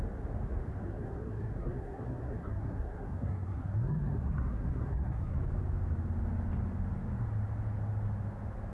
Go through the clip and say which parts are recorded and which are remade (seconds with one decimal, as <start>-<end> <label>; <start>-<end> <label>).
0.0-0.8 recorded; 0.8-5.4 remade; 5.4-8.7 recorded